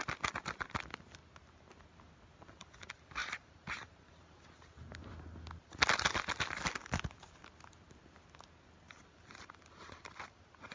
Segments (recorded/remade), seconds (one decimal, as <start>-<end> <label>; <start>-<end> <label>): 0.0-10.7 recorded